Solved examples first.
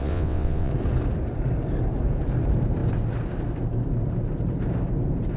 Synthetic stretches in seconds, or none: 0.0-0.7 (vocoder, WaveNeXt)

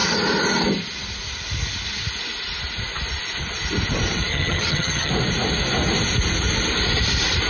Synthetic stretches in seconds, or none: 4.3-5.1 (vocoder, HiFi-GAN)

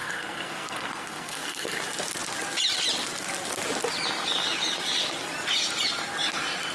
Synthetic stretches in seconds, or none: 0.0-1.8 (codec, SNAC)

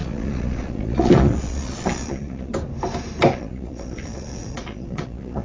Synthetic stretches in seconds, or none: 0.0-2.5 (vocoder, Vocos); 3.3-5.4

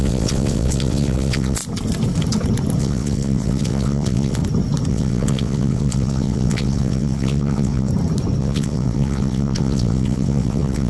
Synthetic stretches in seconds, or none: 0.0-1.6 (vocoder, WaveNeXt); 2.8-4.4; 4.9-7.9; 8.4-10.9

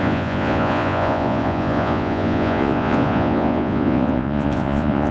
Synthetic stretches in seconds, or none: 0.0-5.1 (vocoder, Vocos)